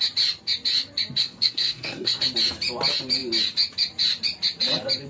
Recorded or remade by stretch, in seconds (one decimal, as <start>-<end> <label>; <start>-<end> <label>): 0.0-1.2 recorded; 1.2-2.2 remade; 2.2-5.1 recorded